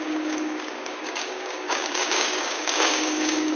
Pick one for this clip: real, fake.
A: fake